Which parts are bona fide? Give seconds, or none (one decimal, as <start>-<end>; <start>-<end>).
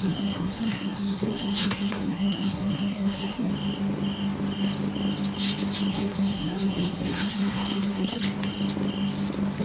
3.5-5.9; 8.2-9.6